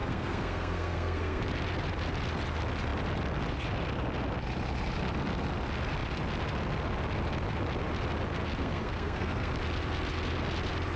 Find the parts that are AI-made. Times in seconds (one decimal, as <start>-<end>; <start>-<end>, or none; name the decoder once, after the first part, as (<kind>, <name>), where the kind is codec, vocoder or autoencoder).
0.0-1.4 (codec, SNAC); 8.6-9.5